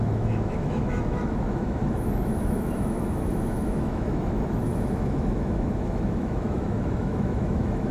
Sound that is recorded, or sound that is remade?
remade